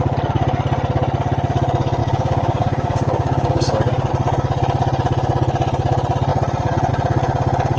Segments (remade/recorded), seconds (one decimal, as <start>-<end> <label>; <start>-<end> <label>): 0.0-2.0 recorded; 2.0-4.1 remade; 4.1-7.8 recorded